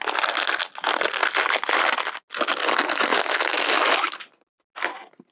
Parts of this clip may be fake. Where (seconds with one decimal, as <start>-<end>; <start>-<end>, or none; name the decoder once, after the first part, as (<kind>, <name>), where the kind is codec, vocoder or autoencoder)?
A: 3.1-4.1 (autoencoder, DAC-VAE)